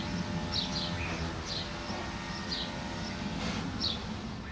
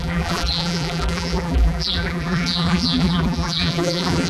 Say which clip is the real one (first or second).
first